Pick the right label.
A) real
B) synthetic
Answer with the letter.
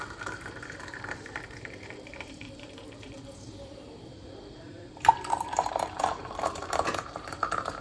B